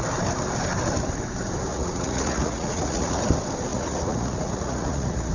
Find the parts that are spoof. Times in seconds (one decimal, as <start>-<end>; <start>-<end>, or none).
1.7-3.2; 3.7-5.3